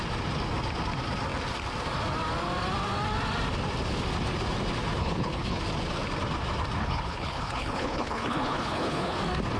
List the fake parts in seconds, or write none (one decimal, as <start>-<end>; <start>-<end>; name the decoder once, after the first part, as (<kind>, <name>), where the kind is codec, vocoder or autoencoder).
5.0-5.6 (codec, HILCodec); 6.8-9.2